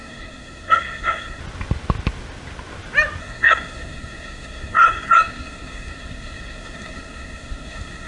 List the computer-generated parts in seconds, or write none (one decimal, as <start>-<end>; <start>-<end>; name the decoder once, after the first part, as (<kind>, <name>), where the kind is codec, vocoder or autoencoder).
0.0-1.4 (codec, SNAC); 3.2-8.1